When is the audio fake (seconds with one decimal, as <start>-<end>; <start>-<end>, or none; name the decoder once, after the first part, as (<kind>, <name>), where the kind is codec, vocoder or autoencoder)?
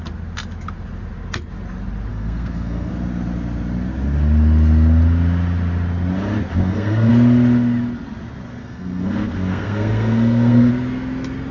2.1-2.9 (codec, SNAC); 6.6-7.1; 8.6-10.7